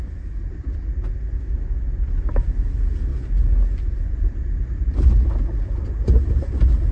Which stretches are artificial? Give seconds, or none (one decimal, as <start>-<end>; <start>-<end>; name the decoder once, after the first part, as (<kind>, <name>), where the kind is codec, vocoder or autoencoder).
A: none